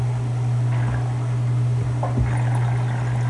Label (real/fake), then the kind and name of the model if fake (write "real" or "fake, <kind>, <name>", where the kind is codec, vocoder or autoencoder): real